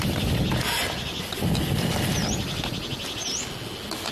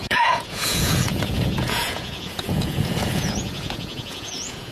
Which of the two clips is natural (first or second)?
first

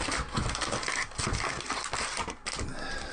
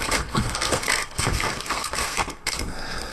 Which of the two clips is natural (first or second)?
first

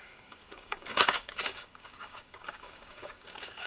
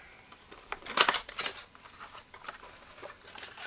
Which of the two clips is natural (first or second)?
second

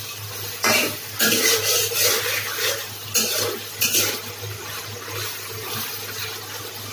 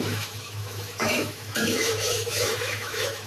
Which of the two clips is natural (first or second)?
first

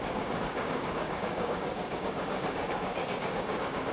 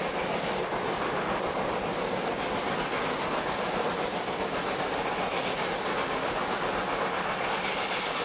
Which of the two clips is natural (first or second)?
second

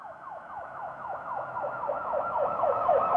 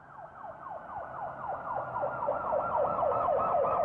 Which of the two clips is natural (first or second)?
second